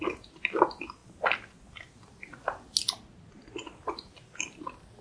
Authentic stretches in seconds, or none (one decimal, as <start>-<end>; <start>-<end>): 0.0-5.0